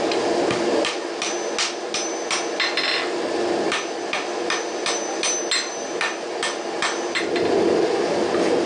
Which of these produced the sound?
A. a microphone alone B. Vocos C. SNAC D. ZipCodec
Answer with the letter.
A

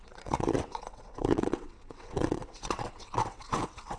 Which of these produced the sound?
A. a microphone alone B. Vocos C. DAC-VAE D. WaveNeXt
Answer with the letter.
D